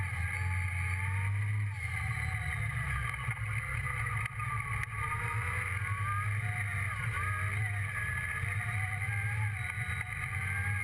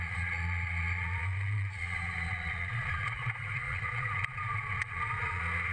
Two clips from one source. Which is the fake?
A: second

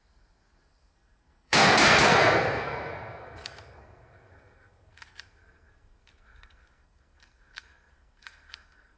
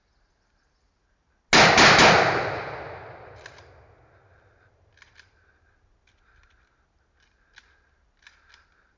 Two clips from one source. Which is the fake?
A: first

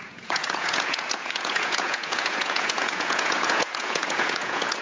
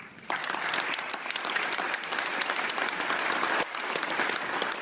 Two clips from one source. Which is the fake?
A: first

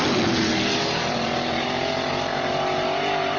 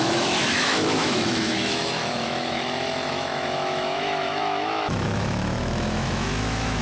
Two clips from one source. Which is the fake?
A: second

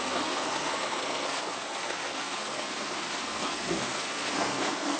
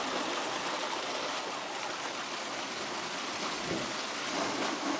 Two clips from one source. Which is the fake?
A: first